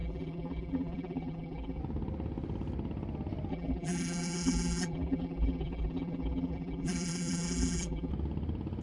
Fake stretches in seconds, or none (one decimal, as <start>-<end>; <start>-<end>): 0.0-1.8; 3.5-8.1